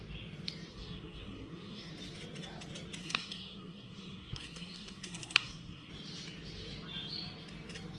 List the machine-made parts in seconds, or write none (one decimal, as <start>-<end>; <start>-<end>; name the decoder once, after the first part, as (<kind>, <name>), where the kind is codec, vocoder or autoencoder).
0.7-1.9 (codec, SNAC); 3.0-5.9